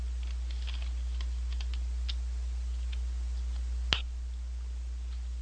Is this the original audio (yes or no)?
yes